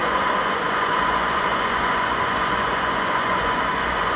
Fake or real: fake